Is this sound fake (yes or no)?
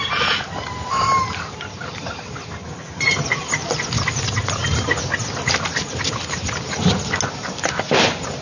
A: no